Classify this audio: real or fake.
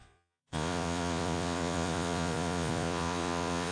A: fake